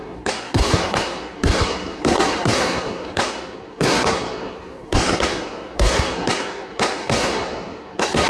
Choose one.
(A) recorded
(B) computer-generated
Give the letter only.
B